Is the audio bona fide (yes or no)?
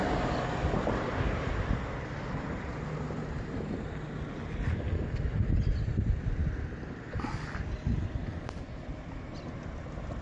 yes